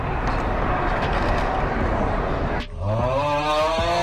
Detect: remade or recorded recorded